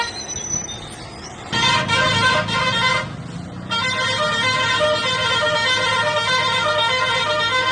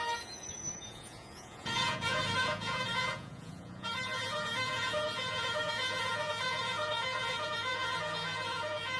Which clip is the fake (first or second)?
second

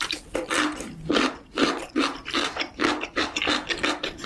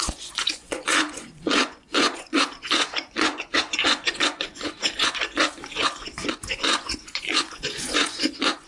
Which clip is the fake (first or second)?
second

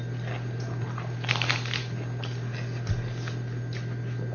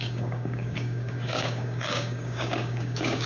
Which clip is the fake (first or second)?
second